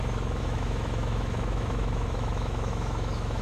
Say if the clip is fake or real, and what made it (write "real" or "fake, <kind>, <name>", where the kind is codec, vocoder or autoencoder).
fake, autoencoder, DAC-VAE